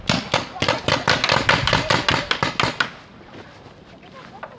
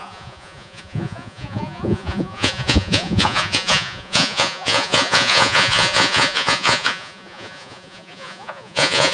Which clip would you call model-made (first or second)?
second